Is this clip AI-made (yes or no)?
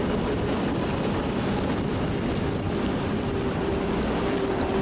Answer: no